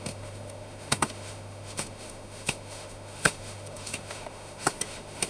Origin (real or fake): fake